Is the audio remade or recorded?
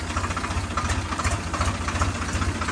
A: recorded